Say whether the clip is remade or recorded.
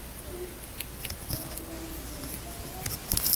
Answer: recorded